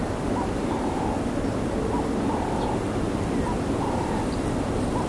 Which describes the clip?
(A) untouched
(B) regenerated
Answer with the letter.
A